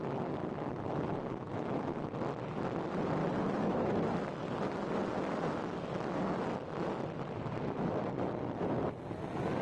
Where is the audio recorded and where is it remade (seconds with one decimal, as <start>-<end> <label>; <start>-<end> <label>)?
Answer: 0.0-0.4 recorded; 0.4-1.0 remade; 1.0-1.5 recorded; 1.5-2.1 remade; 2.1-3.2 recorded; 3.2-4.0 remade; 4.0-9.6 recorded